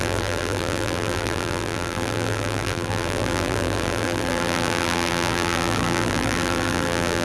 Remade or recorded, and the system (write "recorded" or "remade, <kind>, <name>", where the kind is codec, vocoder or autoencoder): remade, vocoder, BigVGAN v2